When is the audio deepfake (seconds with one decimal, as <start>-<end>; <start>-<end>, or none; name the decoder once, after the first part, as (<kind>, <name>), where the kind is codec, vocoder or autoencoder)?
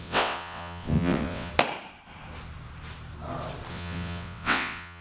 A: 0.0-1.5 (vocoder, WaveNeXt); 3.7-5.0